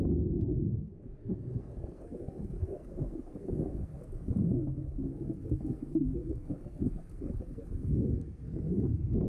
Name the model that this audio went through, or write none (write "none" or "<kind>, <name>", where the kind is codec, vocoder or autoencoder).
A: codec, SNAC